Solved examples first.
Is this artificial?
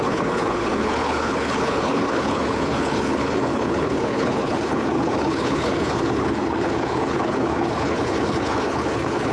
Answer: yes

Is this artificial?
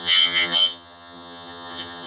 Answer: yes